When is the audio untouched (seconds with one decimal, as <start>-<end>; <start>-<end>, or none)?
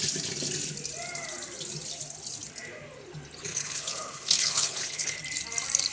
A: 0.0-3.5; 5.2-5.9